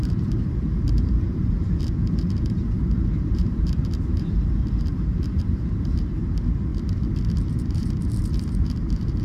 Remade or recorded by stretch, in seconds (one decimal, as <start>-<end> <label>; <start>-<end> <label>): 0.0-6.7 remade; 6.7-7.5 recorded; 7.5-9.2 remade